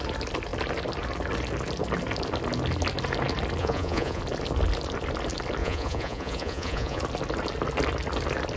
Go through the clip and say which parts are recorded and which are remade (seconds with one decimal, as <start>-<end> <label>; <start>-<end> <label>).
0.0-3.6 recorded; 3.6-4.2 remade; 4.2-5.6 recorded; 5.6-7.0 remade; 7.0-8.6 recorded